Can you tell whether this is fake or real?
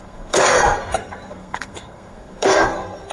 fake